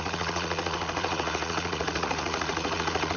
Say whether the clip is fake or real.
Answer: fake